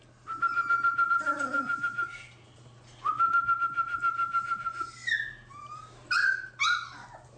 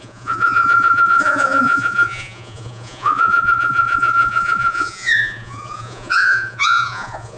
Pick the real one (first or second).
first